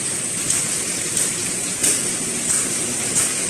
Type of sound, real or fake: fake